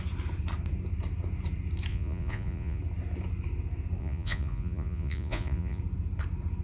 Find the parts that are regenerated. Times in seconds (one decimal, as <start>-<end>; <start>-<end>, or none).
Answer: 1.9-2.8; 4.0-5.8

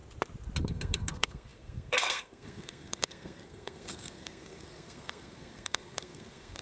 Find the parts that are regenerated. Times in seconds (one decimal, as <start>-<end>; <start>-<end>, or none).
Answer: 0.6-6.6